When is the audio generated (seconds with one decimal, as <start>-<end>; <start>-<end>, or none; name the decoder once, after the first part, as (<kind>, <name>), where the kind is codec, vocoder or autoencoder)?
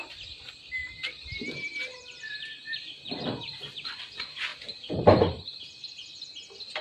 0.8-4.0 (vocoder, BigVGAN v2); 4.5-5.6